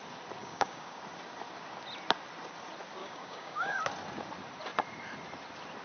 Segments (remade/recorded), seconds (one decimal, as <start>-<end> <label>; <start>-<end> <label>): 0.0-0.4 recorded; 0.4-1.0 remade; 1.0-3.0 recorded; 3.0-3.8 remade; 3.8-5.8 recorded